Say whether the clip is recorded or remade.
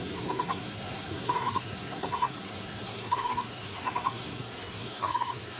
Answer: remade